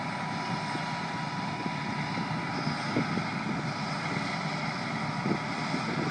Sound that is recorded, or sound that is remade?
recorded